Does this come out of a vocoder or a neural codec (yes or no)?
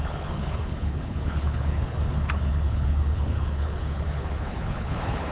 yes